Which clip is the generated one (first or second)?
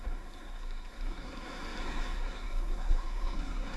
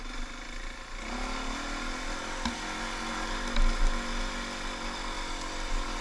first